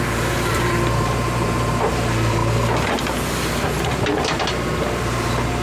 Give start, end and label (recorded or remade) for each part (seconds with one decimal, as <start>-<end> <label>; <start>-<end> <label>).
0.0-2.4 remade; 2.4-3.0 recorded; 3.0-5.6 remade